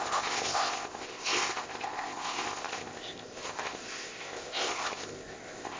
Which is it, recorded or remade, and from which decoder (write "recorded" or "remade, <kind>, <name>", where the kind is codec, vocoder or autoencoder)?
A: remade, codec, ZipCodec